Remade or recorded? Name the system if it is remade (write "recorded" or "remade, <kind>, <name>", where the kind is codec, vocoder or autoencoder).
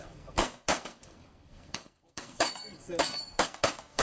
remade, codec, SNAC